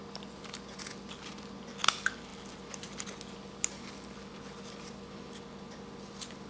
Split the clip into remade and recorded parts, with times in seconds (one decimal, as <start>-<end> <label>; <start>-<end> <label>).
0.0-6.5 recorded